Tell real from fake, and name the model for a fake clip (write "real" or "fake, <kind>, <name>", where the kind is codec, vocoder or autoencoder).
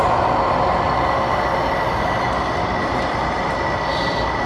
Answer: real